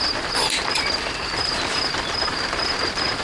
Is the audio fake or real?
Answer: fake